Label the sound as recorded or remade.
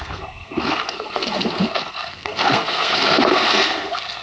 remade